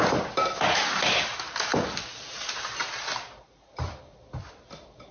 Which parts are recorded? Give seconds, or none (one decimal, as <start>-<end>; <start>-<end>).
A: 0.0-5.1